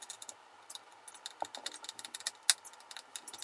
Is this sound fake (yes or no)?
no